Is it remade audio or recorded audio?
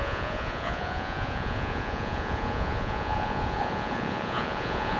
remade